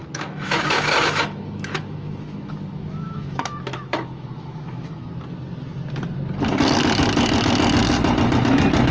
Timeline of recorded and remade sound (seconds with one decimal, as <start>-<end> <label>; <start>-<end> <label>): 0.0-5.1 remade; 5.1-8.9 recorded